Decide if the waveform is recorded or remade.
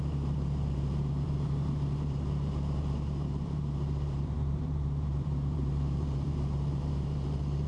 remade